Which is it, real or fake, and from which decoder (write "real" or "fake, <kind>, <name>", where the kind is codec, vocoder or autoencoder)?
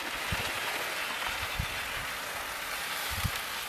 real